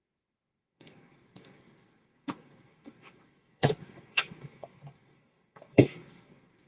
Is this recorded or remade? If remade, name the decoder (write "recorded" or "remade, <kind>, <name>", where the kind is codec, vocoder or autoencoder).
remade, codec, SNAC